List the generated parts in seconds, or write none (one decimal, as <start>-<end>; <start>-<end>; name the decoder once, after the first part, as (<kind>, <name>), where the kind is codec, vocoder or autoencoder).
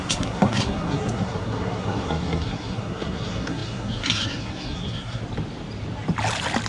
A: 0.0-5.2 (codec, SNAC)